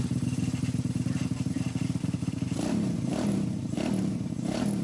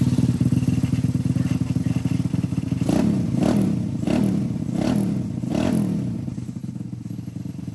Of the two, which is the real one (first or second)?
second